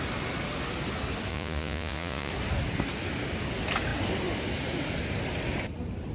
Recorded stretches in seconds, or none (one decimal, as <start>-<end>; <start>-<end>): 0.0-1.3; 2.3-6.1